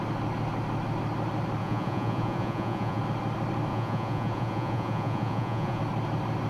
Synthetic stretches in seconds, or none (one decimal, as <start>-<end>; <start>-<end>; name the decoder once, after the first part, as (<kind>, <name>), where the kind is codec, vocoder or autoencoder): 1.6-3.0 (vocoder, Vocos); 3.7-5.8